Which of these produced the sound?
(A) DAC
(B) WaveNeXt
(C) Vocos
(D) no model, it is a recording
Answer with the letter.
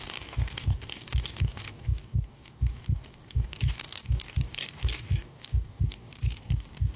A